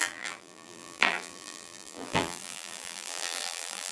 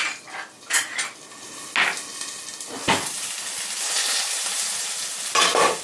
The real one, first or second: second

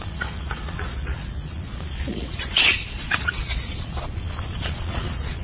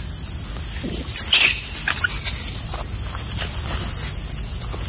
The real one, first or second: second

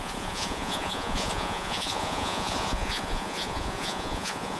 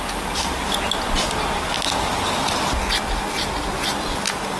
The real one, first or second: second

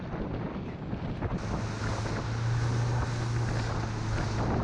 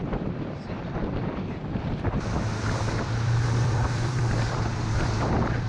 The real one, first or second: first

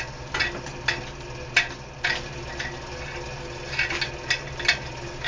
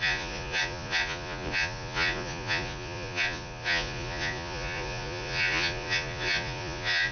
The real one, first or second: first